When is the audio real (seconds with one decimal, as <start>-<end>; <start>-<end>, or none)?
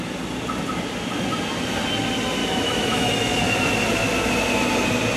0.0-2.4; 3.4-5.2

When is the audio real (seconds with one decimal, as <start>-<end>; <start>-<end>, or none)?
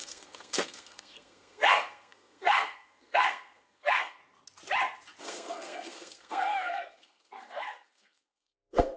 4.2-5.2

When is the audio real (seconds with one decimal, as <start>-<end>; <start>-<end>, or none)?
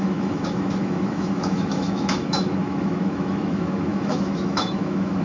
none